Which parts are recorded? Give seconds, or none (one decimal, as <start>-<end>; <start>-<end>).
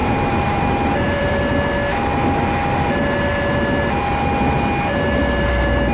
1.4-5.9